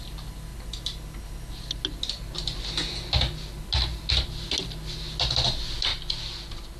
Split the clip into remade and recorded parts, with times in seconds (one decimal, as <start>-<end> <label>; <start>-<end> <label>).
0.0-6.8 recorded